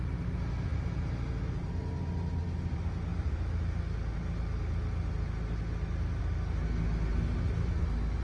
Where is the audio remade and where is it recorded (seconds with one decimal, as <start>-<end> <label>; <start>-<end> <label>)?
0.0-8.2 recorded